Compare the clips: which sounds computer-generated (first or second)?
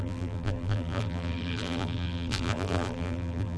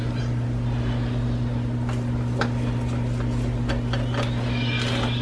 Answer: first